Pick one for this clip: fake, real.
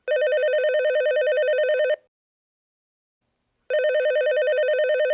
real